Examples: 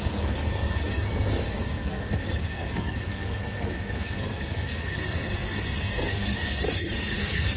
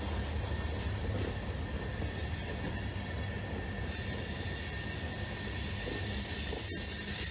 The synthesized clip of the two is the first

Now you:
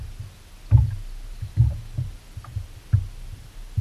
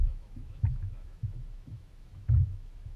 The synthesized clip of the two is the second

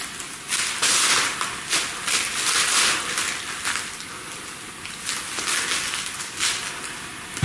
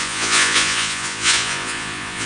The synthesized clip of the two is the second